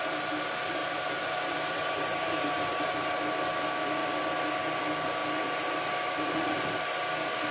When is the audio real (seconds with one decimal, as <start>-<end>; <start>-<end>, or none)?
0.0-0.8; 3.1-7.5